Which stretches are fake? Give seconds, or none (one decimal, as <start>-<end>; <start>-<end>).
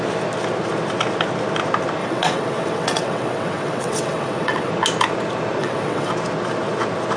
2.0-4.7; 5.6-6.1